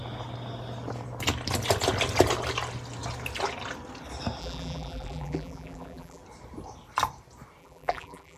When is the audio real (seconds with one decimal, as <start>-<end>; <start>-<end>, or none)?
0.0-4.4; 6.2-7.6